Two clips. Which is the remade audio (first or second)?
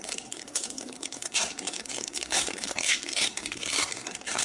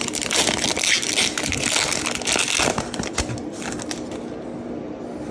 first